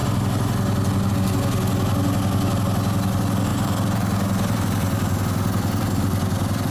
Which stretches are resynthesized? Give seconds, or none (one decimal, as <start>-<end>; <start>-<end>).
3.5-6.0